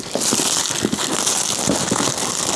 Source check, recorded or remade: recorded